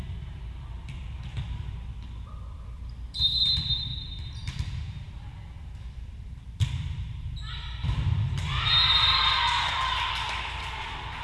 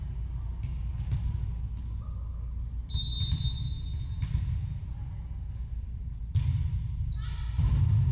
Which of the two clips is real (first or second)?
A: second